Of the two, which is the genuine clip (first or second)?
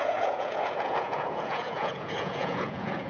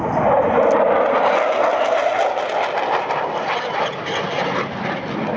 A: second